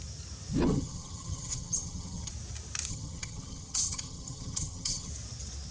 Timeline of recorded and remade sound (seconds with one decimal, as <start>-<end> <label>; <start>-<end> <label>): 0.0-0.6 recorded; 0.6-2.3 remade; 2.3-2.9 recorded; 2.9-5.1 remade; 5.1-5.7 recorded